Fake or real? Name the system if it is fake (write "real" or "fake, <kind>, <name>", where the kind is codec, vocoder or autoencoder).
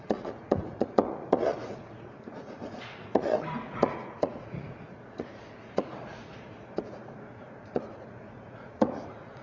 fake, vocoder, Vocos